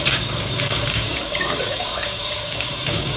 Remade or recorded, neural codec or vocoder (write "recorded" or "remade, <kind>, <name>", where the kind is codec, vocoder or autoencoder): remade, codec, DAC